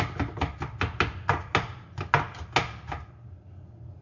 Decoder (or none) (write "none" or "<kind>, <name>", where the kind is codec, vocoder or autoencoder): none